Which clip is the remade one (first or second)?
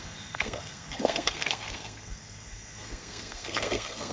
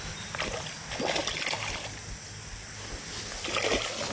first